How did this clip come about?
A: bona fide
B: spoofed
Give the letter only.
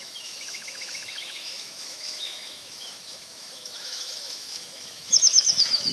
B